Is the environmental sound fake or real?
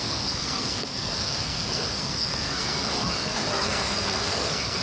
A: fake